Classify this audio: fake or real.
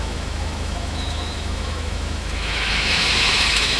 fake